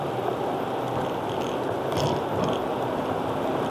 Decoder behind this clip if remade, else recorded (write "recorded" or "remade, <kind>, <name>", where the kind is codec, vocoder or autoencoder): recorded